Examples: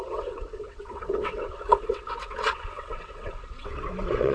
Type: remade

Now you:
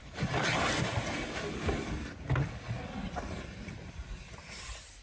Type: recorded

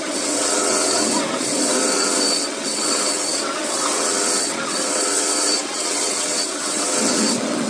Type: remade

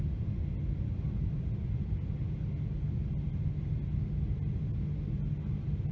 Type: recorded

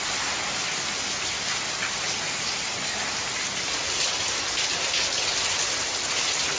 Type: recorded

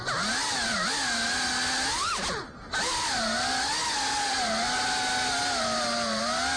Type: recorded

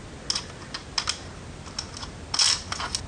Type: recorded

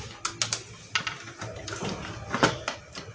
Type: recorded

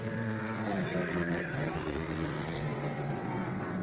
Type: remade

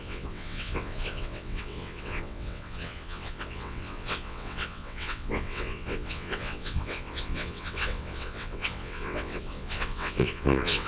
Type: remade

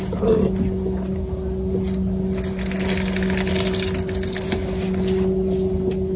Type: recorded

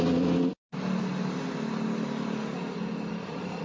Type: recorded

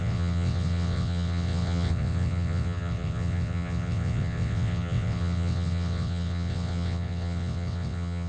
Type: remade